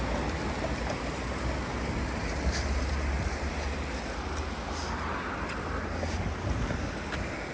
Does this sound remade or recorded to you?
recorded